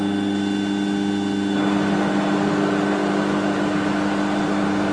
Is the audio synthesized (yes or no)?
no